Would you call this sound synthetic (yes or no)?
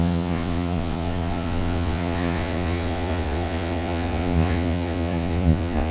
yes